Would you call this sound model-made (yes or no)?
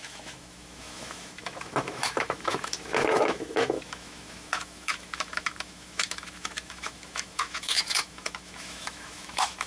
yes